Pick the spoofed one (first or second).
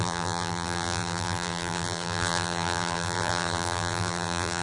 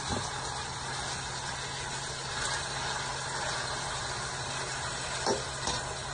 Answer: first